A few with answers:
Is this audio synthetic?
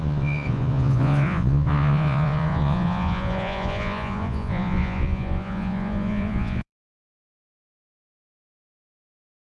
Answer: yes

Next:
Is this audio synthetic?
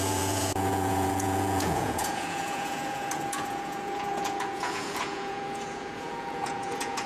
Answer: yes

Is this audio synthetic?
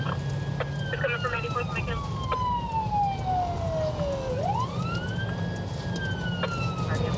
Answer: no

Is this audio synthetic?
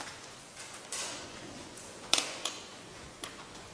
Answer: yes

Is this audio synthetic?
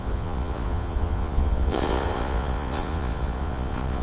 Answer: yes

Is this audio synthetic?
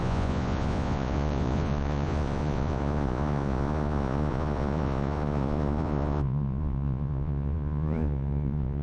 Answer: yes